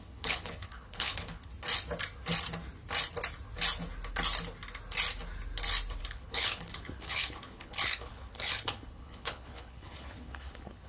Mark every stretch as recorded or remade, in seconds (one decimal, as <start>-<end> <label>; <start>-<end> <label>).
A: 0.0-1.5 remade; 1.5-6.0 recorded; 6.0-10.9 remade